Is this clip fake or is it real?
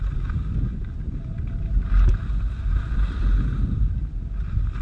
real